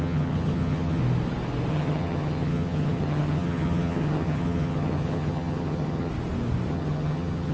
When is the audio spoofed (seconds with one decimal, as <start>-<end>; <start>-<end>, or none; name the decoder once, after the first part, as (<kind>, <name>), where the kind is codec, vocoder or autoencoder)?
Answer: 0.0-1.0 (vocoder, HiFi-GAN); 1.7-6.1; 6.7-7.5